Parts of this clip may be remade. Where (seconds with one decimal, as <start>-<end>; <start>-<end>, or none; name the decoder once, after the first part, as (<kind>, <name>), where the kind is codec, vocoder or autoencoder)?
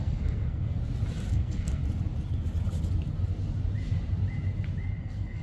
0.0-0.8 (codec, SNAC); 1.3-1.8; 5.0-5.4